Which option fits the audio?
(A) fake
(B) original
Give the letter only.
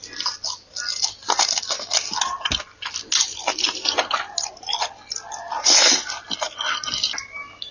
B